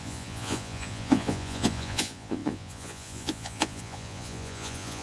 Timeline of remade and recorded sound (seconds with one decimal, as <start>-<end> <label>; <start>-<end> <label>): 0.0-5.0 remade